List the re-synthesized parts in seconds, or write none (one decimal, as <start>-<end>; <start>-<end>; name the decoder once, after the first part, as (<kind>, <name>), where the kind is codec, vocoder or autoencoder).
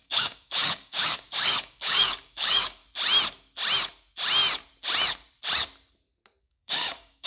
0.0-2.8 (codec, DAC); 6.4-7.3